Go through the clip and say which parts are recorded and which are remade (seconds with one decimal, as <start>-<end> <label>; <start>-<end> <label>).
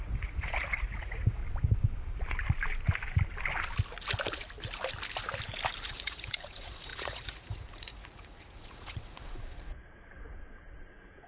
0.0-1.4 remade; 1.4-5.9 recorded; 5.9-11.3 remade